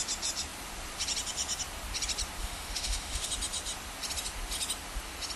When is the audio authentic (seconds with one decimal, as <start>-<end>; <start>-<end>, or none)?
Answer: 0.0-2.4; 3.3-5.4